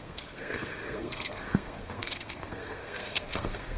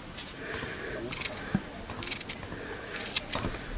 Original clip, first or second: second